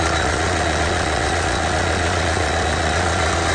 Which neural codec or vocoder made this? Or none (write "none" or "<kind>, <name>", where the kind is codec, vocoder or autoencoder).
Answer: vocoder, Vocos